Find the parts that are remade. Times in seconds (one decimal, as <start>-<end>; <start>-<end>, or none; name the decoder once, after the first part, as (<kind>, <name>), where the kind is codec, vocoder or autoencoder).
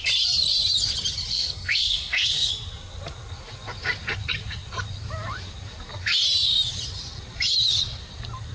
1.3-2.5 (codec, SNAC)